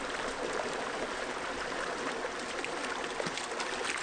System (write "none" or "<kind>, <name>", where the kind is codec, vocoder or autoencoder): none